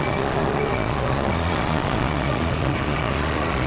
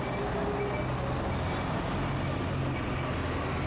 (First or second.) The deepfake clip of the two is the first